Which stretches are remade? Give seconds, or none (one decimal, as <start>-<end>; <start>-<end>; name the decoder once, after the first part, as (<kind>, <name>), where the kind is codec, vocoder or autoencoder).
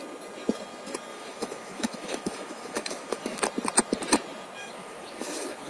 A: 1.1-3.4 (autoencoder, DAC-VAE); 4.6-5.7